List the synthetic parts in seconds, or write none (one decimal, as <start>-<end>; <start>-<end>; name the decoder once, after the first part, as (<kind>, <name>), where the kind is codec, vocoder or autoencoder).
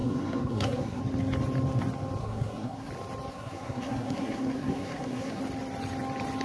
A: 0.0-1.0 (codec, SNAC); 2.2-2.9; 3.3-5.4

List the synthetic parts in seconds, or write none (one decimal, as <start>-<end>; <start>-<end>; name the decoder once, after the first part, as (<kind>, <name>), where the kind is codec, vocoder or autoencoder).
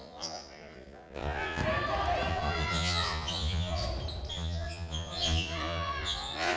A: 0.0-1.6 (vocoder, Vocos); 2.3-3.8; 4.3-6.6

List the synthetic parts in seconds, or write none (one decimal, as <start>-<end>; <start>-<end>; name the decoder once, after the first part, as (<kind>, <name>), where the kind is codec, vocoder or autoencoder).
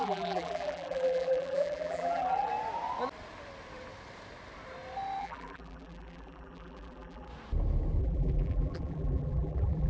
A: 0.0-2.5 (vocoder, BigVGAN v2); 5.2-7.3; 8.0-9.9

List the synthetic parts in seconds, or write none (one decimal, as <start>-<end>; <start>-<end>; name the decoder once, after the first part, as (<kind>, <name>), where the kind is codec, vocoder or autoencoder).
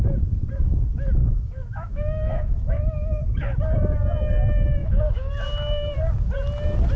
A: 1.2-3.6 (autoencoder, DAC-VAE); 4.8-5.3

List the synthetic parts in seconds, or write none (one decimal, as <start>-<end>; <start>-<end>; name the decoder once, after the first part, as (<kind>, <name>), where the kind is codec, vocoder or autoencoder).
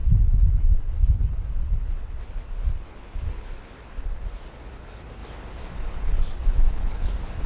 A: 0.0-7.5 (codec, HILCodec)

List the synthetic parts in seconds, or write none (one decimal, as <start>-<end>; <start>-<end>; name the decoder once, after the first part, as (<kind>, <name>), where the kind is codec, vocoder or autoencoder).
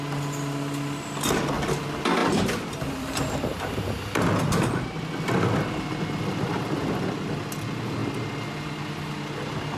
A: 2.2-3.4 (vocoder, BigVGAN v2)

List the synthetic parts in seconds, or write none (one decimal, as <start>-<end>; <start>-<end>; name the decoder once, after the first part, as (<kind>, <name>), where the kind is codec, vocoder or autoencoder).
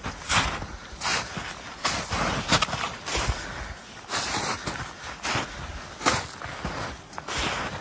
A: none